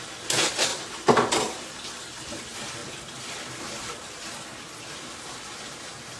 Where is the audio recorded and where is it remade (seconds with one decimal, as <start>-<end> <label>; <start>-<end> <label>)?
0.0-0.7 recorded; 0.7-1.6 remade; 1.6-6.2 recorded